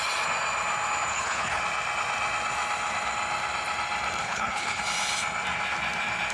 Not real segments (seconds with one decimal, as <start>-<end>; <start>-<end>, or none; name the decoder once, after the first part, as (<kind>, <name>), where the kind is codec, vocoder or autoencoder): 1.1-1.6 (codec, HILCodec); 4.2-4.8